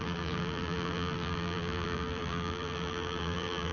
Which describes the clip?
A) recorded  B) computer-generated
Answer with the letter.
B